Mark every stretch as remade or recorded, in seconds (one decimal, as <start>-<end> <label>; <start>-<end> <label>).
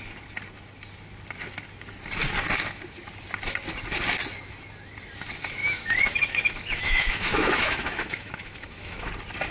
0.0-5.6 recorded; 5.6-9.1 remade; 9.1-9.5 recorded